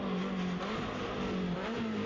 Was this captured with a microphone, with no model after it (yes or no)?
yes